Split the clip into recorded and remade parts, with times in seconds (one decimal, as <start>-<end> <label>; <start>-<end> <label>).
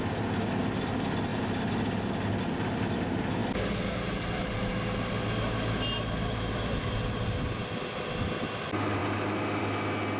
0.0-10.2 recorded